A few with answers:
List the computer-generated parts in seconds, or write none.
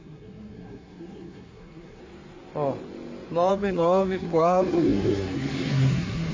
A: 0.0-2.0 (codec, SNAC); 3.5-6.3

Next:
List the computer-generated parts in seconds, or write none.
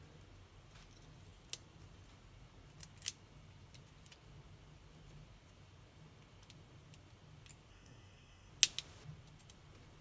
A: 7.7-8.5 (codec, SNAC)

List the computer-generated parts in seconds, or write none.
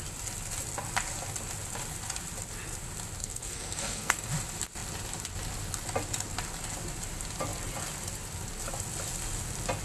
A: 3.2-4.3 (codec, SNAC)